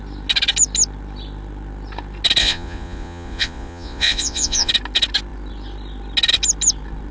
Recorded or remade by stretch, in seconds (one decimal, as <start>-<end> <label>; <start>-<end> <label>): 0.0-2.4 recorded; 2.4-4.7 remade; 4.7-7.1 recorded